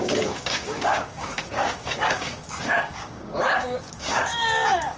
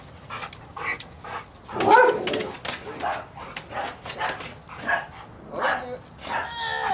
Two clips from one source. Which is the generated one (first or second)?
first